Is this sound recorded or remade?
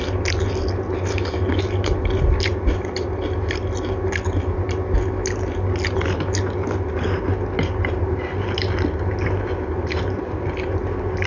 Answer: recorded